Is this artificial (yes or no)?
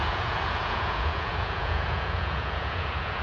yes